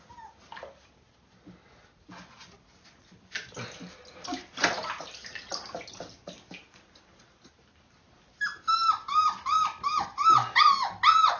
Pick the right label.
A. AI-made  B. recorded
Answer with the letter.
B